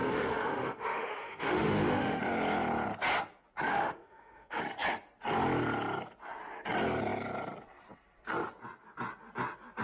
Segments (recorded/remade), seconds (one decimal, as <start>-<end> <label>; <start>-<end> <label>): 0.0-2.2 remade; 2.2-3.7 recorded; 3.7-4.6 remade; 4.6-9.8 recorded